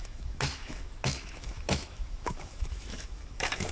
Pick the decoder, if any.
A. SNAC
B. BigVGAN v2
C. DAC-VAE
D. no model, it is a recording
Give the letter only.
C